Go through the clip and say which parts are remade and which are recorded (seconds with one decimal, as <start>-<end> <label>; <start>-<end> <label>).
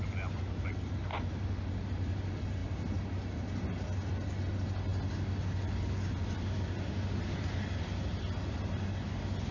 0.0-9.5 recorded